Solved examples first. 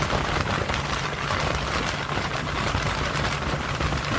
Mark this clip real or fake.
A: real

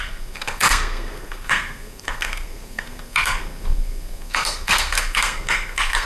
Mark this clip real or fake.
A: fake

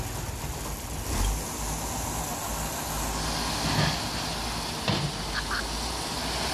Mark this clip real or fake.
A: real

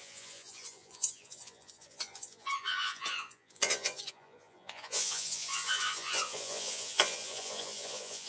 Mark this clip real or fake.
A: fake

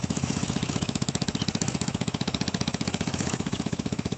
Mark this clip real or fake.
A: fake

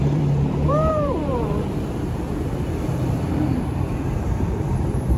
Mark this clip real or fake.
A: fake